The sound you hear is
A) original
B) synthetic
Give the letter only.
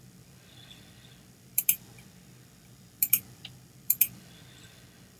B